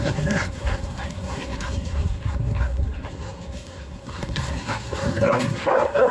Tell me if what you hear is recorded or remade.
remade